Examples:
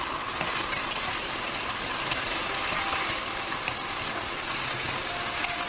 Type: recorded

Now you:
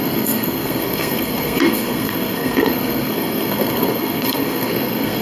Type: remade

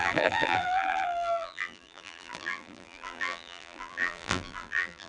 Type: remade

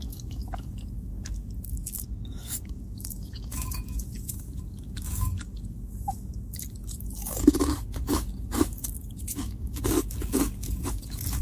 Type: remade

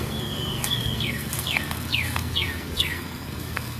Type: remade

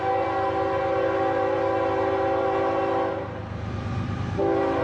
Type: recorded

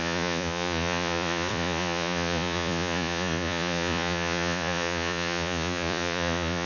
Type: remade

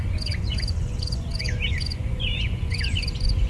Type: remade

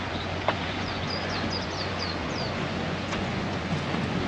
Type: remade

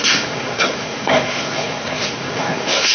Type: remade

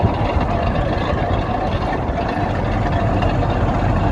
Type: recorded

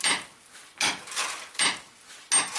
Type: recorded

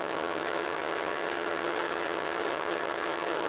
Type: remade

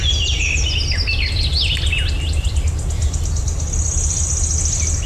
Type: recorded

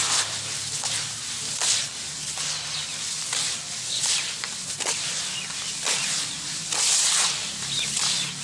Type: recorded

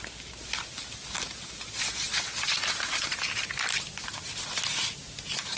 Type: recorded